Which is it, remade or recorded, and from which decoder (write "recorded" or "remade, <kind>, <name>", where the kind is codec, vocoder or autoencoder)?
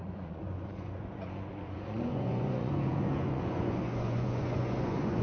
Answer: remade, vocoder, Vocos